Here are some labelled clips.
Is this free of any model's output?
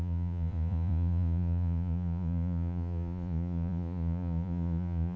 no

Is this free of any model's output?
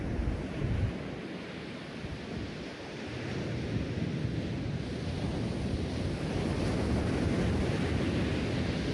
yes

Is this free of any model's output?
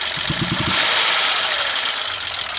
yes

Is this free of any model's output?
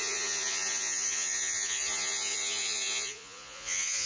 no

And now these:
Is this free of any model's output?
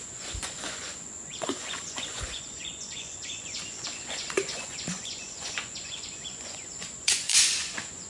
no